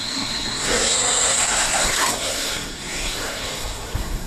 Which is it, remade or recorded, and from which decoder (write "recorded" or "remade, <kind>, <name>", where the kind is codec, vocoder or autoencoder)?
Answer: remade, codec, SNAC